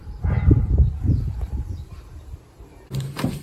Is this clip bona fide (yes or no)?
no